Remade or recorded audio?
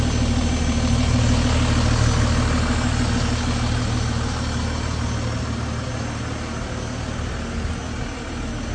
recorded